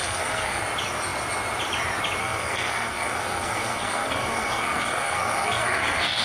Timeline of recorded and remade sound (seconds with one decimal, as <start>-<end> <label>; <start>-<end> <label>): 0.0-0.6 remade; 0.6-2.2 recorded; 2.2-6.2 remade